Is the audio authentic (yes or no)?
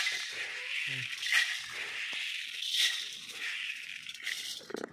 yes